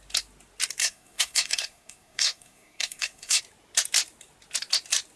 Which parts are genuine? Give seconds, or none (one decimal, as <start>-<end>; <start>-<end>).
0.0-0.8; 3.4-5.2